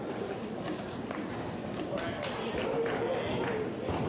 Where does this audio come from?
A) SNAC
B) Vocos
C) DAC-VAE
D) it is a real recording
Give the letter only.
D